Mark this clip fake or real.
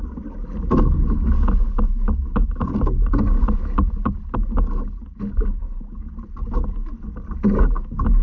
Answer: real